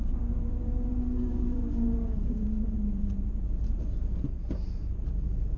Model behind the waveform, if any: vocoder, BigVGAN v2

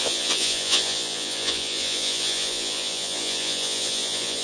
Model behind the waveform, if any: vocoder, Vocos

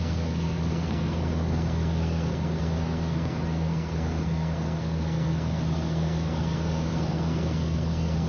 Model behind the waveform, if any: codec, SNAC